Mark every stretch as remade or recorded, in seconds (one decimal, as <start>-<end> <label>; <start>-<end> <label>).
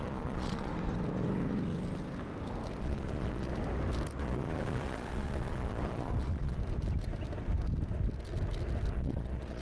0.0-0.7 remade; 0.7-2.8 recorded; 2.8-3.5 remade; 3.5-4.2 recorded; 4.2-6.6 remade; 6.6-8.9 recorded; 8.9-9.6 remade